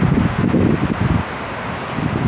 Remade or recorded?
recorded